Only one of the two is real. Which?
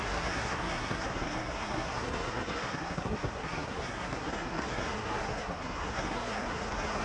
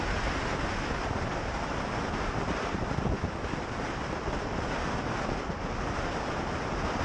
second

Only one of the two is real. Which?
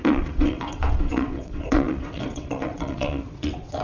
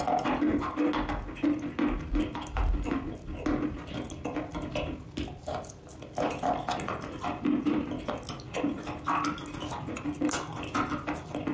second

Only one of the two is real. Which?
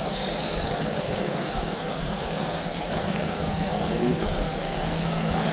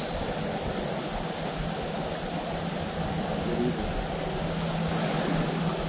second